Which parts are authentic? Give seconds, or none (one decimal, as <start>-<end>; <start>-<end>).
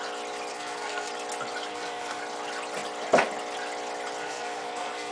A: 0.0-0.5; 1.1-1.7; 2.2-4.2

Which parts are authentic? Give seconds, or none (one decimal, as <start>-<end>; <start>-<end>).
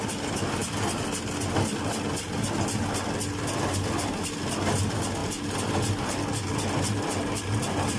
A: 0.0-8.0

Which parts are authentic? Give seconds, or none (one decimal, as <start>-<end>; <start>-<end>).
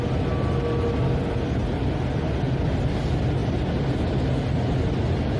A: 0.0-5.4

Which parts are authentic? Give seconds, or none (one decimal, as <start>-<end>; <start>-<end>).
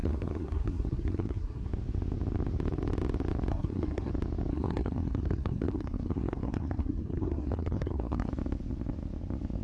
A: 1.7-3.5; 4.1-4.5; 8.3-9.6